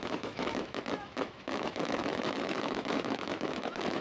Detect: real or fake fake